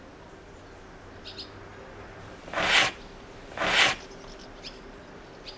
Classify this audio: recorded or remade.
recorded